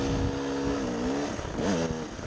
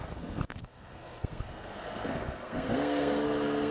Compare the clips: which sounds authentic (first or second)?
first